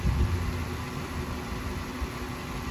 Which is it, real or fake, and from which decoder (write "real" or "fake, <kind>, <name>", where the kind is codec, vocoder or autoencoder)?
fake, vocoder, BigVGAN v2